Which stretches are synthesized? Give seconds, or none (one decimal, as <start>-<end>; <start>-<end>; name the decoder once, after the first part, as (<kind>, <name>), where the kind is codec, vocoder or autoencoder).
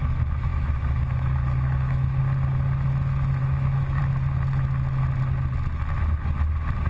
0.5-2.2 (autoencoder, DAC-VAE); 3.4-4.0